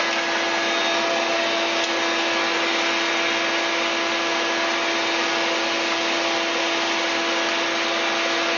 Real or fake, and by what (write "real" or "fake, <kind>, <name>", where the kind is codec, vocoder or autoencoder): real